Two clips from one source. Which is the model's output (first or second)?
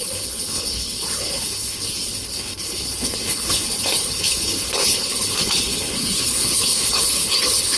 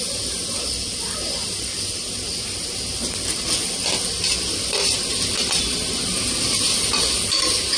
first